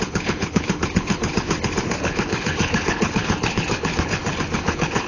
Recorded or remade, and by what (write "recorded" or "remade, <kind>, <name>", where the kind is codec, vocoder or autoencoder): remade, codec, HILCodec